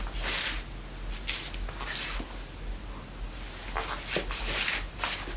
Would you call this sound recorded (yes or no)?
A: yes